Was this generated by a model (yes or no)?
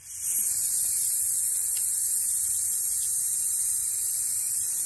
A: no